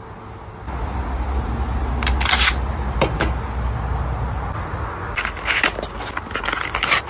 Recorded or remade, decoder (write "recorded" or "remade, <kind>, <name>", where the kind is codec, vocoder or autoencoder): recorded